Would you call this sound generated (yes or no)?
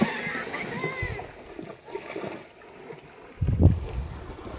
no